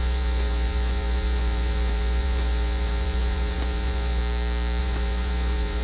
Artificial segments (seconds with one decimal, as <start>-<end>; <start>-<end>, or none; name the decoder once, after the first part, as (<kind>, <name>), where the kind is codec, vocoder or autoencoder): 0.0-4.2 (vocoder, Vocos); 4.8-5.8